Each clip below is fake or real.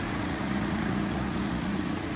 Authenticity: fake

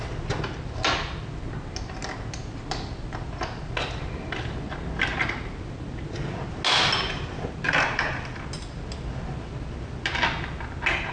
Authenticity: real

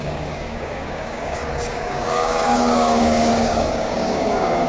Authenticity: fake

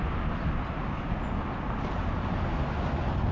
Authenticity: real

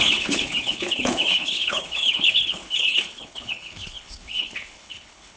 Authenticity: fake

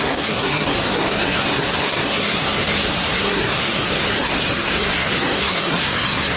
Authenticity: fake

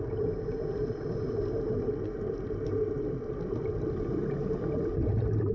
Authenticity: real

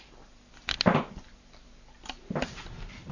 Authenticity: real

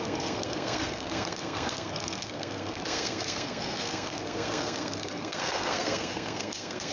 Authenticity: fake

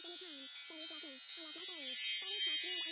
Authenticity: real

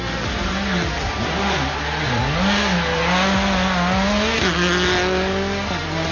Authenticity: real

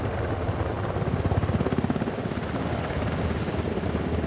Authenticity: real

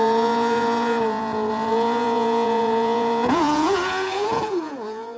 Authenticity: fake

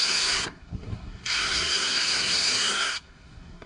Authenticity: fake